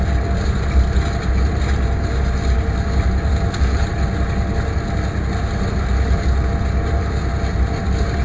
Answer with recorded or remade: recorded